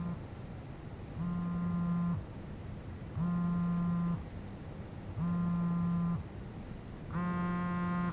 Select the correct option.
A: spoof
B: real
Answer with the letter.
B